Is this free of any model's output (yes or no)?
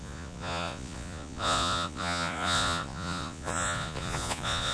no